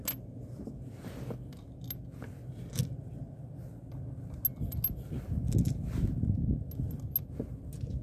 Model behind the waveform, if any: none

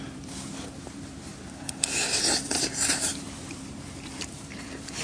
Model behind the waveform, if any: vocoder, BigVGAN v2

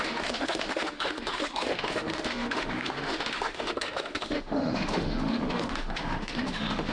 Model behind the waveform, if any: autoencoder, DAC-VAE